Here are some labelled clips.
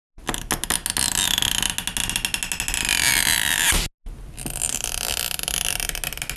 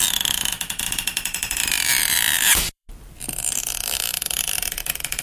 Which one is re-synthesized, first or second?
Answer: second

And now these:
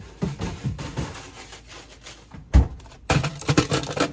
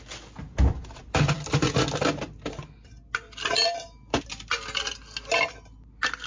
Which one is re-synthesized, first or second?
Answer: first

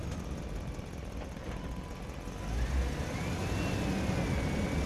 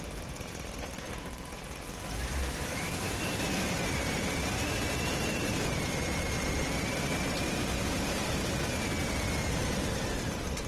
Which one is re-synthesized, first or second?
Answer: second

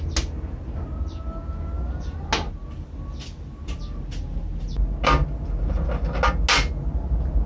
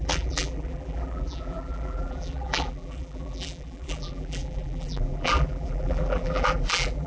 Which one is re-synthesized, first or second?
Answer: second